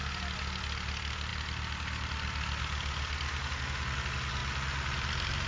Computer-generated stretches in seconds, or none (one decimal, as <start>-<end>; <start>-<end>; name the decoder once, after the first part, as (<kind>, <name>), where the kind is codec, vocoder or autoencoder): none